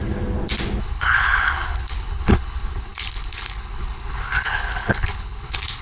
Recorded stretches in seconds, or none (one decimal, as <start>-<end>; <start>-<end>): 0.0-0.8